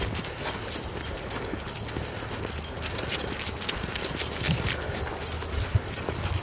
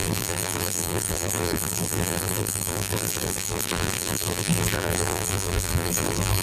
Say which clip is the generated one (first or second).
second